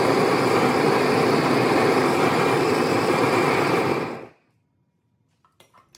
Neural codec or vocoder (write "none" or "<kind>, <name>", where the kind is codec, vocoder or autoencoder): none